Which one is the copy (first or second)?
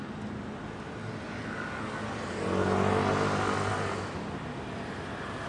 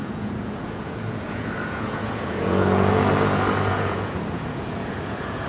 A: second